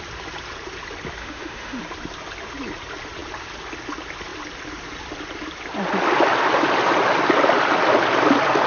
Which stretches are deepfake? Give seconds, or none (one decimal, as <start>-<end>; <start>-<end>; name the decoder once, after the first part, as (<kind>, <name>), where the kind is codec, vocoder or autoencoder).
1.2-1.8 (autoencoder, DAC-VAE)